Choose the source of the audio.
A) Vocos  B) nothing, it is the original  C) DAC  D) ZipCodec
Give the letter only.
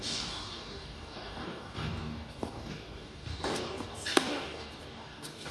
C